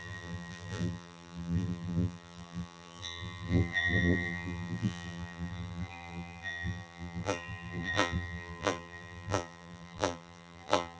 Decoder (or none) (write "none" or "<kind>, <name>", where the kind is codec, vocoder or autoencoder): vocoder, BigVGAN v2